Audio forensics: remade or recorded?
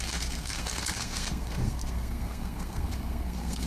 remade